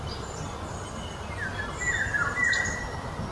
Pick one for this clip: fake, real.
real